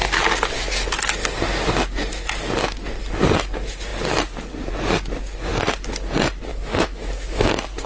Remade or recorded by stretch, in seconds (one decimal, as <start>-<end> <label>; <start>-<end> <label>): 0.0-6.5 recorded; 6.5-7.5 remade; 7.5-7.9 recorded